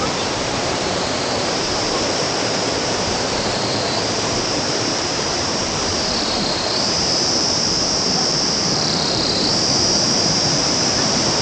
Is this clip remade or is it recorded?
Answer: remade